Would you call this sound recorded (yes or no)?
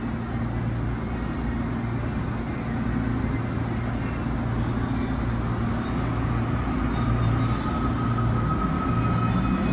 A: yes